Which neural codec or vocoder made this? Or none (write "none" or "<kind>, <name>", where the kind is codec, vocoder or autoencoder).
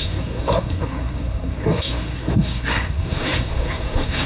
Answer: codec, SNAC